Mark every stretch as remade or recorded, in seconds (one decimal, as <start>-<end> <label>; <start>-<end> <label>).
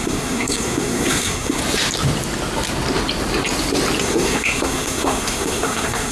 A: 0.0-1.6 remade; 1.6-4.0 recorded; 4.0-6.1 remade